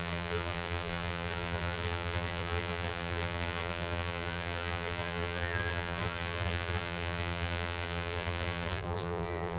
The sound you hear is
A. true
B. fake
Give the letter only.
B